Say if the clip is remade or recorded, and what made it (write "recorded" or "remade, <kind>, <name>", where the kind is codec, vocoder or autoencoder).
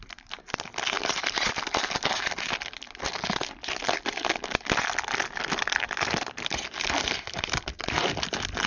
recorded